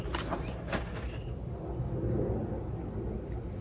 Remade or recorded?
recorded